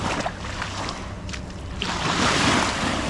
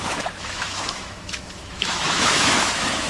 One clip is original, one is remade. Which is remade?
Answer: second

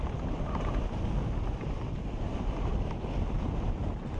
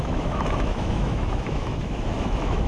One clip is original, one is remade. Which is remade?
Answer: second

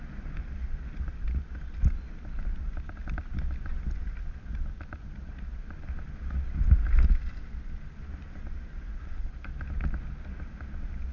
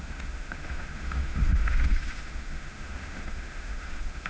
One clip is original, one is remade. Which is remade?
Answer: second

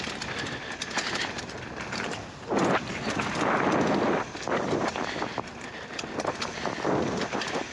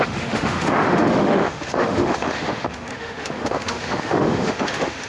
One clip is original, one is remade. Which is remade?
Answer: second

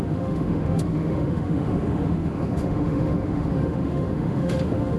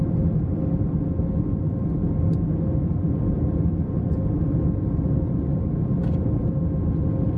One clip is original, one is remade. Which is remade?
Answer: first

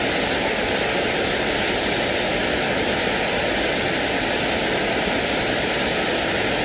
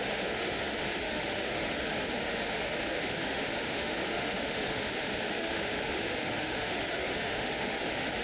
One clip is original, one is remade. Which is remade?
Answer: second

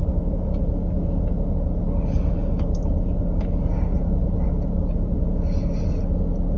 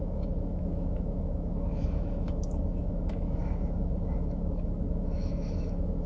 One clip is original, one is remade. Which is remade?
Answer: second